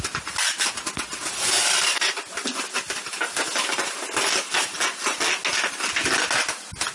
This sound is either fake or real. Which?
real